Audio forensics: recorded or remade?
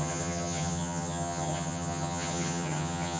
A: remade